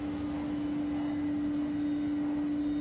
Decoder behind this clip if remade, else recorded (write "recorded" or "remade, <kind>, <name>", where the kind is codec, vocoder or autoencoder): recorded